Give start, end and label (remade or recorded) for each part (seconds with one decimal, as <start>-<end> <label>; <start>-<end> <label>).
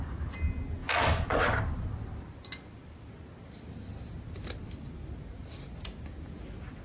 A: 0.0-6.8 recorded